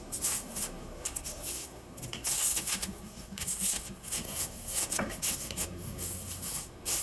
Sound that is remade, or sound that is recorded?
remade